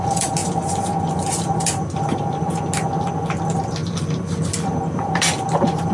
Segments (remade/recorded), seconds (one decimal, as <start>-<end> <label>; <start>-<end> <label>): 0.0-5.9 recorded

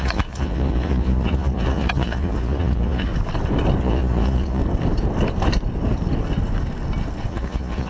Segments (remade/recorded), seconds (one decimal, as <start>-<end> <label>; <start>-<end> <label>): 0.0-3.1 remade; 3.1-3.8 recorded; 3.8-4.6 remade; 4.6-7.3 recorded; 7.3-7.9 remade